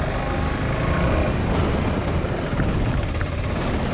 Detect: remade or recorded recorded